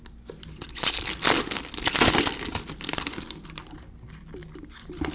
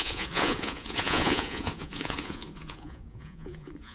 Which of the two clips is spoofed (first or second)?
second